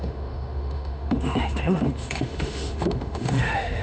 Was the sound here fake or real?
fake